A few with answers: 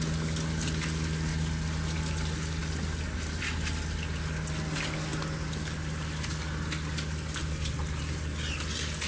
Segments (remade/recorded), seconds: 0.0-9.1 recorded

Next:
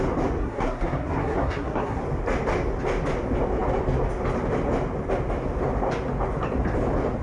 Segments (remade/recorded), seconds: 0.0-0.4 recorded; 0.4-2.0 remade; 2.0-7.2 recorded

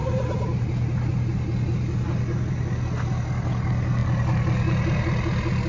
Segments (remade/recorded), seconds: 0.0-5.7 recorded